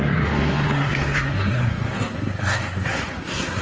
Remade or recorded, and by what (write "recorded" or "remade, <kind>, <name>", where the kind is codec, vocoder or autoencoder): remade, codec, SNAC